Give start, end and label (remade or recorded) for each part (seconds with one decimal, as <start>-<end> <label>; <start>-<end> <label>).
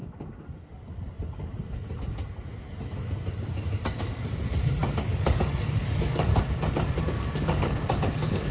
0.0-4.0 recorded; 4.0-6.3 remade; 6.3-7.0 recorded; 7.0-8.5 remade